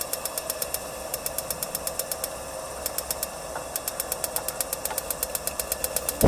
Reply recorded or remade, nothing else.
recorded